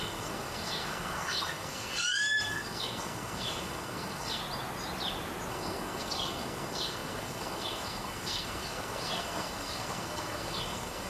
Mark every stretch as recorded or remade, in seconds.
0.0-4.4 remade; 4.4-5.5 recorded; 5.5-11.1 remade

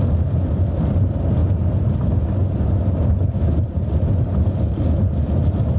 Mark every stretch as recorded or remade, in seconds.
0.0-5.8 recorded

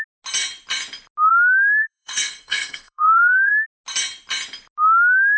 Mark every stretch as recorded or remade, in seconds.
0.0-1.8 recorded; 1.8-3.5 remade; 3.5-5.4 recorded

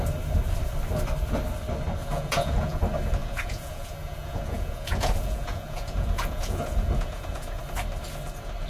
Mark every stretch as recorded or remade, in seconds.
0.0-2.0 recorded; 2.0-2.8 remade; 2.8-3.2 recorded; 3.2-7.6 remade; 7.6-8.7 recorded

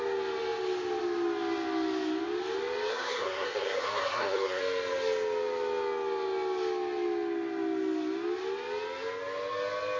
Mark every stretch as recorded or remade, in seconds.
0.0-2.9 recorded; 2.9-4.6 remade; 4.6-10.0 recorded